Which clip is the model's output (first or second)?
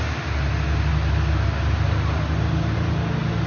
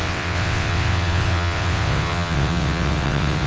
second